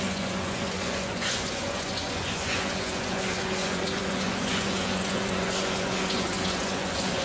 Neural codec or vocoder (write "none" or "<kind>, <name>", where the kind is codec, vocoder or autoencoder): vocoder, Vocos